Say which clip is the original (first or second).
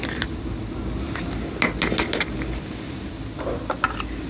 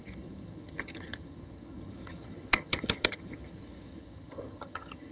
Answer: first